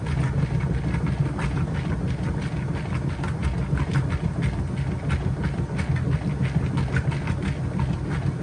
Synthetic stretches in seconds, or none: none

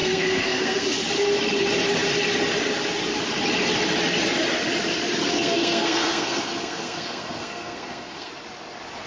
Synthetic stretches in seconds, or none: 0.0-1.0 (codec, SNAC); 5.3-8.3

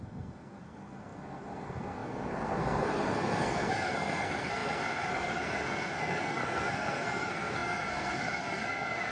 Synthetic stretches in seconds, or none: 0.0-9.1 (codec, SNAC)

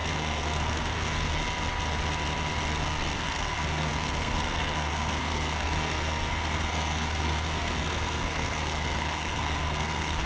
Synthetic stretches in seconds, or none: 0.0-1.4 (codec, SNAC); 2.8-10.3

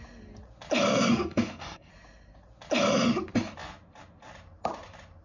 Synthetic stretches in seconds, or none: 0.9-1.9 (codec, SNAC)

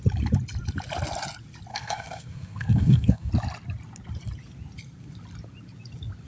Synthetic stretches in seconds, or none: 1.7-3.3 (codec, SNAC)

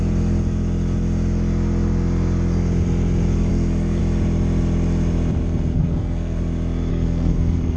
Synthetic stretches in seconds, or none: 3.5-4.0 (codec, SNAC); 5.7-6.4; 6.9-7.8

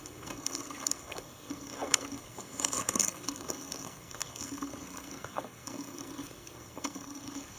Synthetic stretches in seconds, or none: 0.0-7.6 (codec, SNAC)